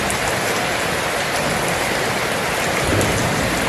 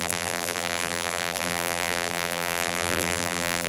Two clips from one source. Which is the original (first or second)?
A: first